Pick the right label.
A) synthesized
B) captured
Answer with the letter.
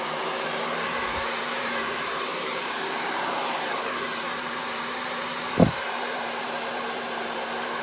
A